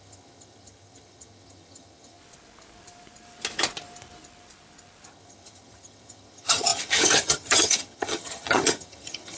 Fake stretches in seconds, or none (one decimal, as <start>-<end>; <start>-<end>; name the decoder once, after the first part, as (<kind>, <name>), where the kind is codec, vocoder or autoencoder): 0.0-2.2 (vocoder, HiFi-GAN); 5.1-9.4